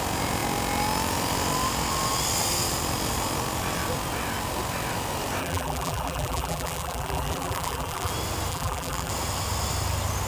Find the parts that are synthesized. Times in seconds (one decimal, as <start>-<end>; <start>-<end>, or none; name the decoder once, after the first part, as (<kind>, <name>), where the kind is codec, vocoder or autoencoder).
5.4-8.1 (vocoder, BigVGAN v2); 8.5-9.1